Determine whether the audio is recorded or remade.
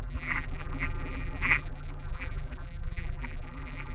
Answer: remade